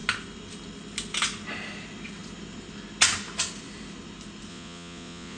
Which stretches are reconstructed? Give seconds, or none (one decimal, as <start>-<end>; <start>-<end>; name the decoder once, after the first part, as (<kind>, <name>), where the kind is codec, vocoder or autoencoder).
4.5-5.4 (vocoder, Vocos)